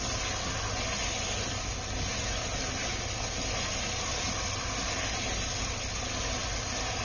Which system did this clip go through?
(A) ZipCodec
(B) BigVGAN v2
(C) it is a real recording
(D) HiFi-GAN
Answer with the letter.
C